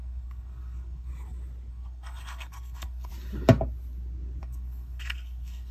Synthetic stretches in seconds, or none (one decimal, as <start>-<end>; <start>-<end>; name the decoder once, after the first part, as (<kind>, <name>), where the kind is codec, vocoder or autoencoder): 0.0-1.1 (codec, SNAC); 1.7-3.1; 4.4-5.7